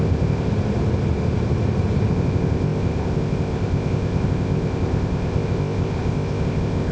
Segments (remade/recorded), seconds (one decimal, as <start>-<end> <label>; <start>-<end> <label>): 0.0-0.5 remade; 0.5-2.1 recorded; 2.1-6.9 remade